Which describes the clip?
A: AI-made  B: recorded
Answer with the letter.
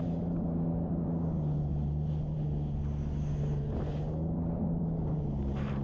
B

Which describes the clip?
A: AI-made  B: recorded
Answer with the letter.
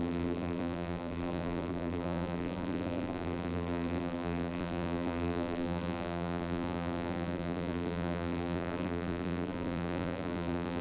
A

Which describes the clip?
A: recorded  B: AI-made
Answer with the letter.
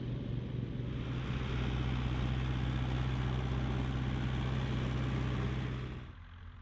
A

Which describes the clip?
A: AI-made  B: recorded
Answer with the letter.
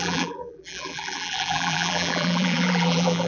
A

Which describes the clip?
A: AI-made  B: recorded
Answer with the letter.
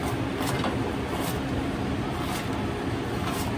B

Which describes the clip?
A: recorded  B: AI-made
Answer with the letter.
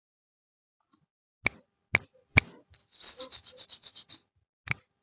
A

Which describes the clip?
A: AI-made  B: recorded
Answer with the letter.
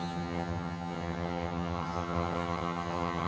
A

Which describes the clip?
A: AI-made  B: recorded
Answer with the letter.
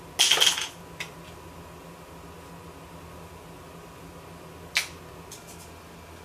B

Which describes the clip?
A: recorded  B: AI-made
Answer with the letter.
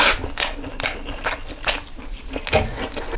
A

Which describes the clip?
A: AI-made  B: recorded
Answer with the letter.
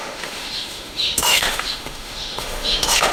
A